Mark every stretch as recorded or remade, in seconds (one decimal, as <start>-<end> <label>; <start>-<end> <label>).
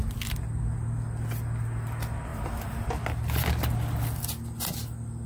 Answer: 0.0-2.3 recorded; 2.3-2.9 remade; 2.9-5.3 recorded